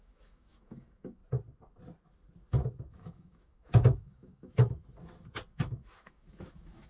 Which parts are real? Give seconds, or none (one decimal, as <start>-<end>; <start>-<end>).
1.2-2.9; 4.6-5.5

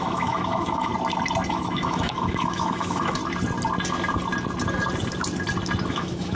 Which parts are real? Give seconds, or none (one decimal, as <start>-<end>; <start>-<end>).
0.9-1.5; 3.2-5.9

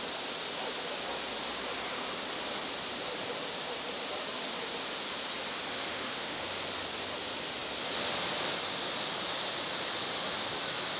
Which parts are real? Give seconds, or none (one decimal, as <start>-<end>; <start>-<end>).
0.0-5.7; 6.4-11.0

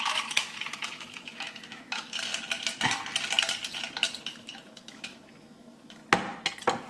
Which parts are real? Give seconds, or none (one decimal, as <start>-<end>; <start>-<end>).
2.3-4.2; 6.0-6.9

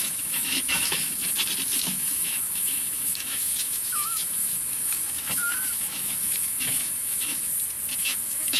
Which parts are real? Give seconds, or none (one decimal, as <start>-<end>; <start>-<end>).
1.2-1.8; 7.5-8.0

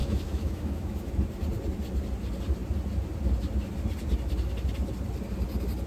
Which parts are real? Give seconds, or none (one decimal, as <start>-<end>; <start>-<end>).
1.1-5.9

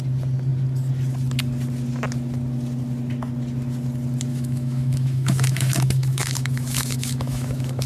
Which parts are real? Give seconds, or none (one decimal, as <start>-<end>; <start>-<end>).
0.0-4.3

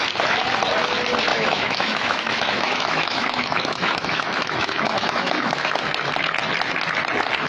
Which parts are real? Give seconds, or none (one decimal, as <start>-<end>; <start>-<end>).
0.0-1.3; 5.8-7.5